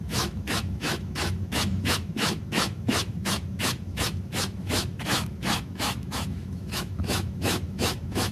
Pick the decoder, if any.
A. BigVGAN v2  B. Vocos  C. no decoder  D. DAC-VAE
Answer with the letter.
D